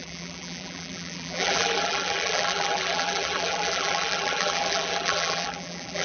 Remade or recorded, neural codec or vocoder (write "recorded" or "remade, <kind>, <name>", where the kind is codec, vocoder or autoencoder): remade, vocoder, BigVGAN v2